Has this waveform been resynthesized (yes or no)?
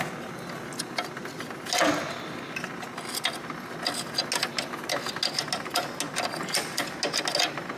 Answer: no